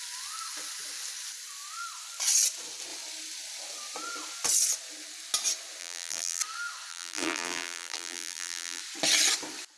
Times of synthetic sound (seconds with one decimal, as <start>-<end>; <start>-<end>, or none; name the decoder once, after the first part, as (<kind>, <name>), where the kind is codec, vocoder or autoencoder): 5.8-6.4 (vocoder, BigVGAN v2); 6.9-8.8

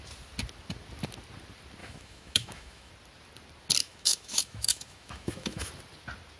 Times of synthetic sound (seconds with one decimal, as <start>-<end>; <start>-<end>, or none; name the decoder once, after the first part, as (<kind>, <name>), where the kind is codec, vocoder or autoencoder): 1.8-2.9 (autoencoder, DAC-VAE); 3.8-5.7

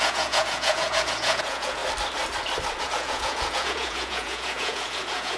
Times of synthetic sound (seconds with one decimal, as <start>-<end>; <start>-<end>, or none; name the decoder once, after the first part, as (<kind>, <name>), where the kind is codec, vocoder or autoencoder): 0.0-1.8 (vocoder, Vocos); 2.8-5.4

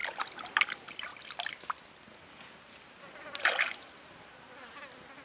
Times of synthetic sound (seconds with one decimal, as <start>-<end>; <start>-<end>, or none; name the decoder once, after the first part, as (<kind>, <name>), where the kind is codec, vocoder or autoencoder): none

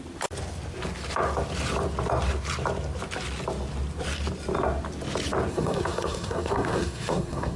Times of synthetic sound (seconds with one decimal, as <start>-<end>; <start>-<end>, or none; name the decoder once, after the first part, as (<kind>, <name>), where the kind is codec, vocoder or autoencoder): 5.5-7.6 (codec, SNAC)

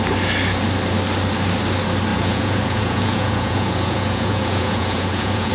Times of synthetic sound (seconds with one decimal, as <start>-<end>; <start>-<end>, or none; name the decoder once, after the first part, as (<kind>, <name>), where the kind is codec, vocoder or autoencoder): 2.1-5.5 (vocoder, Vocos)

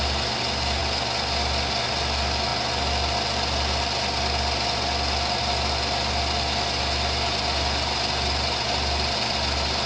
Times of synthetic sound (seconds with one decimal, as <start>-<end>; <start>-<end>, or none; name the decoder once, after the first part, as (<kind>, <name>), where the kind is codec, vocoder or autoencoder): none

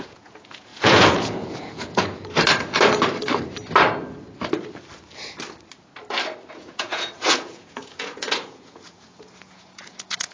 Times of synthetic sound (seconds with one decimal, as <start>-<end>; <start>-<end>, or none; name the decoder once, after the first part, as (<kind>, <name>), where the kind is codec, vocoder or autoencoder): 0.0-2.3 (vocoder, Vocos); 6.5-10.3